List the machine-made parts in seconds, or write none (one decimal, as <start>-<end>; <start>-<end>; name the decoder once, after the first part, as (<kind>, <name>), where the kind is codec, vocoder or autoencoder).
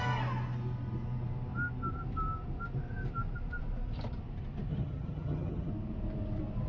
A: 4.7-5.7 (vocoder, HiFi-GAN)